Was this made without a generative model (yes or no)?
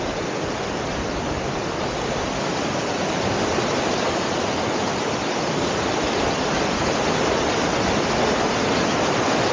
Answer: yes